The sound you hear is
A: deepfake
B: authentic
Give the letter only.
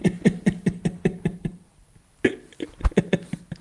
B